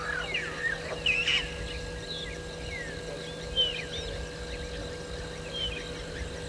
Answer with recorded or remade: recorded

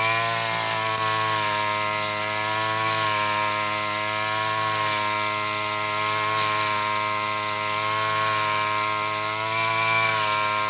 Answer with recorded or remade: recorded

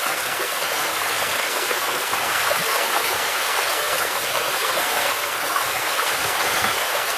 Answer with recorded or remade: remade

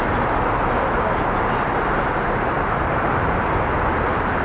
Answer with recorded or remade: recorded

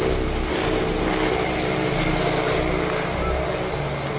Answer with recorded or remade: recorded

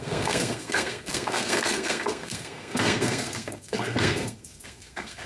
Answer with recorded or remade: remade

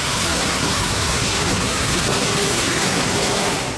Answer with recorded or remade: remade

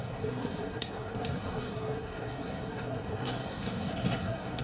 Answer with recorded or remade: remade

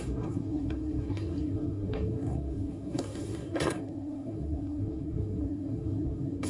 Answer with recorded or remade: remade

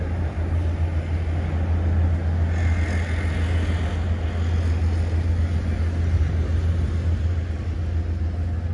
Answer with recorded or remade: recorded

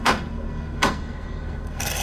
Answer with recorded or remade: remade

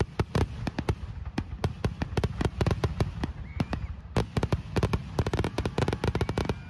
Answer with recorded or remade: recorded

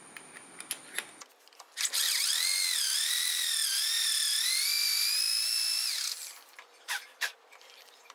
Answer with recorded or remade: recorded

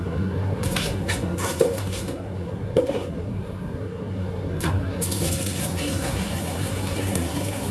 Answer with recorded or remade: remade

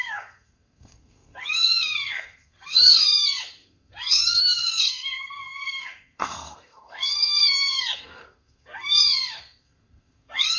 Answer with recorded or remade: remade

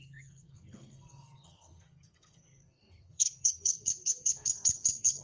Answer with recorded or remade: remade